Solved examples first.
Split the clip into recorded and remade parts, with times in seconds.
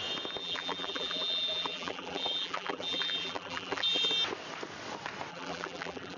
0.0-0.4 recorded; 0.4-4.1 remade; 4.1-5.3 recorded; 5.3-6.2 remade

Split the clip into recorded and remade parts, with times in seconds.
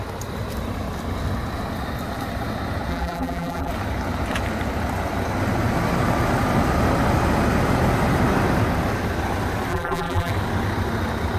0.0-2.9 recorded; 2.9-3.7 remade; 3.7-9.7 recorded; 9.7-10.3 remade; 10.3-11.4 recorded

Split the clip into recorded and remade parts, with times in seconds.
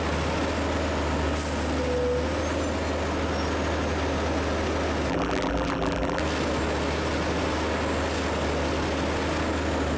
0.0-5.1 recorded; 5.1-6.2 remade; 6.2-10.0 recorded